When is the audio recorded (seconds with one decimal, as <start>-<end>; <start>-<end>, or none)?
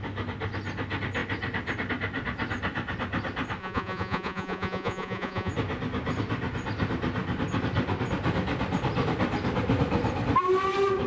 0.0-3.6; 5.5-11.1